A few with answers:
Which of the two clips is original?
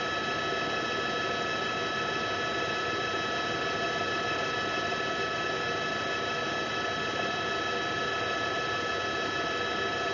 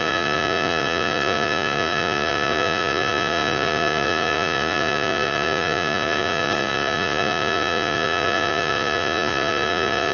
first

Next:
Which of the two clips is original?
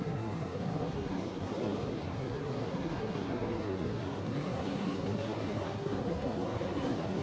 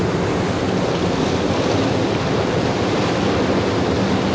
second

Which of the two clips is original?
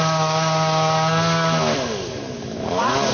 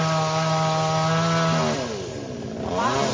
second